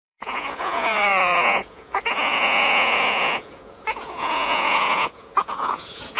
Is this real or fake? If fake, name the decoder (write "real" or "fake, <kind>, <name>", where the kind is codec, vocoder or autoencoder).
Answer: fake, vocoder, Vocos